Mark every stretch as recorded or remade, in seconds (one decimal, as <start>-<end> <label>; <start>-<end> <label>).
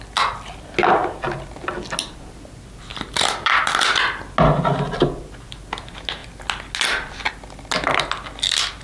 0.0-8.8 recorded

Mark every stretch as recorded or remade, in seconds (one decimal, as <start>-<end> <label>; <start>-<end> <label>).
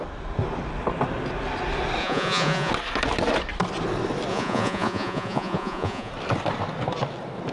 0.0-2.0 recorded; 2.0-2.7 remade; 2.7-4.3 recorded; 4.3-6.1 remade; 6.1-7.5 recorded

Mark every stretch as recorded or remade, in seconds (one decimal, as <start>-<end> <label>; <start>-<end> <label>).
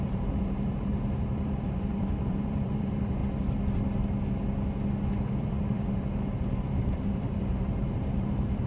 0.0-3.2 remade; 3.2-5.4 recorded; 5.4-8.7 remade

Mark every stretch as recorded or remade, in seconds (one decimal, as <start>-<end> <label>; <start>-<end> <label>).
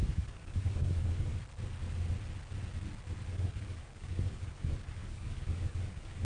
0.0-1.3 remade; 1.3-3.3 recorded; 3.3-6.2 remade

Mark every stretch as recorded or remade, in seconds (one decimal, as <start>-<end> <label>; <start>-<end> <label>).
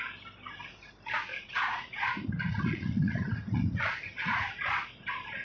0.0-1.3 recorded; 1.3-4.5 remade; 4.5-5.4 recorded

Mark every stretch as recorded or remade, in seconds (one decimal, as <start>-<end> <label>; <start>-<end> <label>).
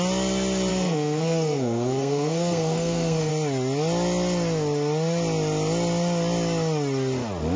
0.0-0.7 recorded; 0.7-3.3 remade; 3.3-7.6 recorded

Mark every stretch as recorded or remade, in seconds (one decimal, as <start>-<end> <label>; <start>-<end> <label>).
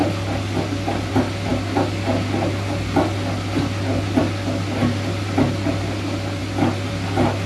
0.0-7.5 recorded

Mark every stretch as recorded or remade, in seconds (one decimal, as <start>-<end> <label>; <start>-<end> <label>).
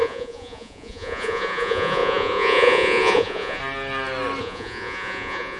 0.0-3.6 remade; 3.6-4.4 recorded; 4.4-5.6 remade